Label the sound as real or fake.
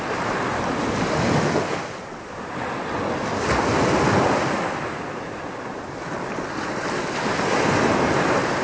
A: real